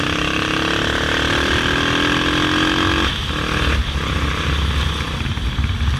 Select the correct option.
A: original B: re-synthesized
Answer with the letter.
A